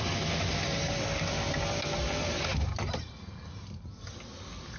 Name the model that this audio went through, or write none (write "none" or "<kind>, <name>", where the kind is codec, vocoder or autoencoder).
none